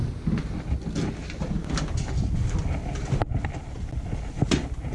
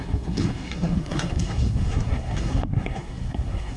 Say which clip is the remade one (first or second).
second